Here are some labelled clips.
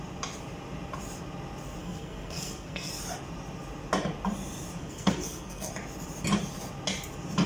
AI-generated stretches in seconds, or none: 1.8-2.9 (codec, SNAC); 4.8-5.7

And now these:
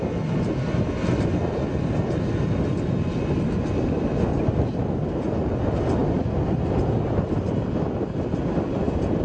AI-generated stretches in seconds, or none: none

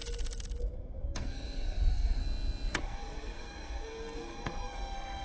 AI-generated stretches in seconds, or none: 0.6-2.2 (codec, SNAC); 2.8-5.2

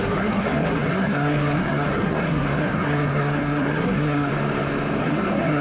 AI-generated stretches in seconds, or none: 0.0-4.3 (codec, SNAC); 5.0-5.6

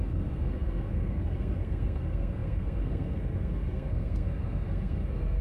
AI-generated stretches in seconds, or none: 0.0-5.4 (codec, SNAC)

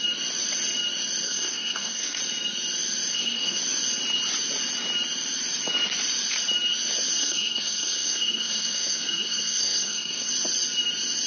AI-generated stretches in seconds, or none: 1.2-2.2 (codec, SNAC); 3.1-3.6; 7.2-10.3